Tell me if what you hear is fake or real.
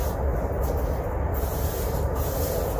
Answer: real